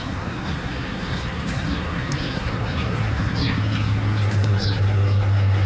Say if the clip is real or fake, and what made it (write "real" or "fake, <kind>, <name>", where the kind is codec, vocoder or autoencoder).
fake, codec, SNAC